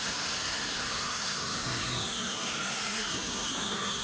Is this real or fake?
fake